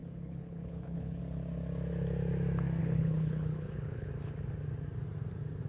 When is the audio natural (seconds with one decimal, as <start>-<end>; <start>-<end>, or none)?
1.2-2.8; 4.1-5.7